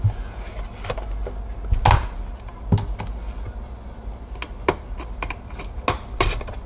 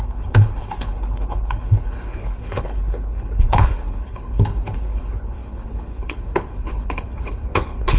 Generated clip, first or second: second